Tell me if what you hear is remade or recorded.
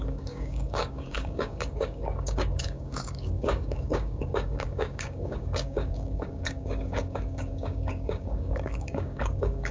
remade